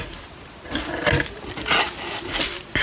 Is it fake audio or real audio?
real